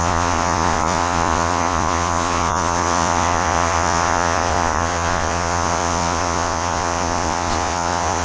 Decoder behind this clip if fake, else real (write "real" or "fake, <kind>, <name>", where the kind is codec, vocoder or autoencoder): fake, vocoder, Vocos